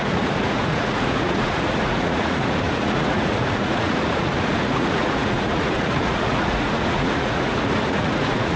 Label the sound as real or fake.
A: fake